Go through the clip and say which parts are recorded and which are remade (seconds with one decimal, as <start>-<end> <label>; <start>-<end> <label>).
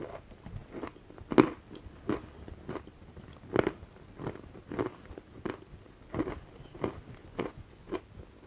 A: 0.0-7.2 recorded; 7.2-8.0 remade; 8.0-8.5 recorded